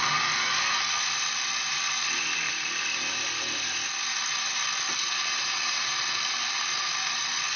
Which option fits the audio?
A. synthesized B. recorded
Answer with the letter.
B